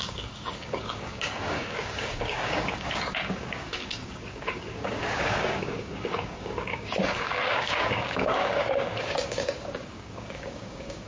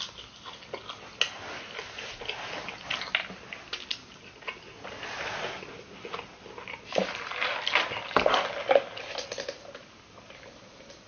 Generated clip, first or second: first